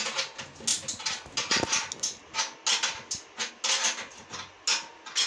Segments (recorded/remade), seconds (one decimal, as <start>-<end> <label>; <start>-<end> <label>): 0.0-5.3 recorded